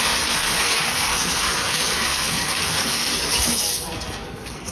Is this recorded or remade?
remade